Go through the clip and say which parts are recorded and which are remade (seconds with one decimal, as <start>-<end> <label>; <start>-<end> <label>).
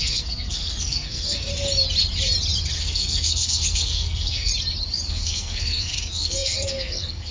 0.0-1.5 remade; 1.5-2.8 recorded; 2.8-4.5 remade; 4.5-5.1 recorded; 5.1-7.3 remade